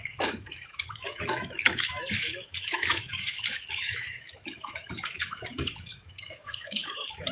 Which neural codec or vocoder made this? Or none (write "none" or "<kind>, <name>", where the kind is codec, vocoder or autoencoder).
autoencoder, DAC-VAE